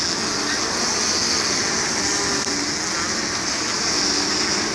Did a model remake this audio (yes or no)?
no